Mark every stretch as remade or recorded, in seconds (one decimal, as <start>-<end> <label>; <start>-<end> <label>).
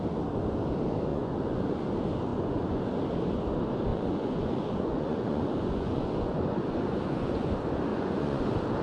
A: 0.0-1.1 recorded; 1.1-1.9 remade; 1.9-2.3 recorded; 2.3-2.8 remade; 2.8-3.9 recorded; 3.9-7.5 remade; 7.5-7.9 recorded; 7.9-8.4 remade; 8.4-8.8 recorded